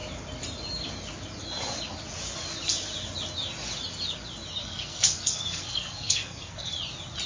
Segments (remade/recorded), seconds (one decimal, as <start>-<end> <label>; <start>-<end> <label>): 0.0-4.6 recorded; 4.6-6.7 remade; 6.7-7.3 recorded